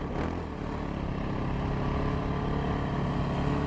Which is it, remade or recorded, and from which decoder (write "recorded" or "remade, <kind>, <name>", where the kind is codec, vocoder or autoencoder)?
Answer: recorded